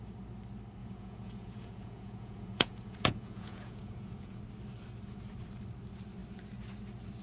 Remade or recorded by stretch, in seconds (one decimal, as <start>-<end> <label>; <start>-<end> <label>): 0.0-0.8 recorded; 0.8-4.4 remade; 4.4-7.2 recorded